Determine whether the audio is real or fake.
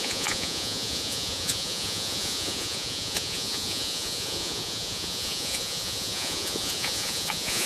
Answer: fake